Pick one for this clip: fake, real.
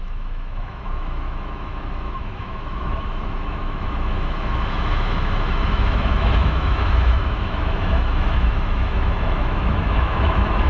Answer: fake